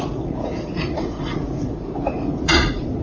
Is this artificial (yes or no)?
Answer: yes